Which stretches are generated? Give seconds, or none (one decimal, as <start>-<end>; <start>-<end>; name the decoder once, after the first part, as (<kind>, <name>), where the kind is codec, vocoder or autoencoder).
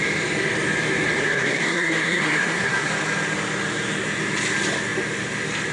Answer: 1.2-2.9 (codec, SNAC)